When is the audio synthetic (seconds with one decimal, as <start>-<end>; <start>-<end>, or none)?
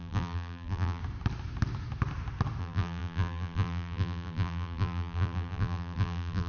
0.0-1.0; 2.6-6.5